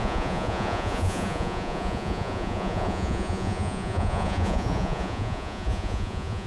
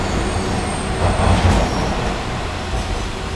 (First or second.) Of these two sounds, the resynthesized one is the first